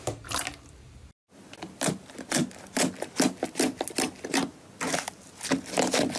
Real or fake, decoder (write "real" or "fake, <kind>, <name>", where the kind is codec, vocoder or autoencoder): real